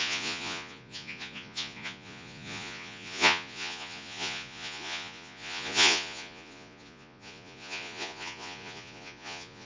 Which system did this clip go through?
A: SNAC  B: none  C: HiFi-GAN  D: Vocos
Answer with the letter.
D